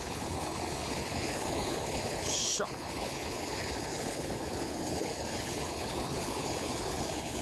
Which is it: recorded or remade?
remade